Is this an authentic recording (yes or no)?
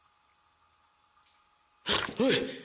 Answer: yes